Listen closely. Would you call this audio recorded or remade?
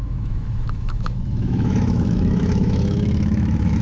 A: remade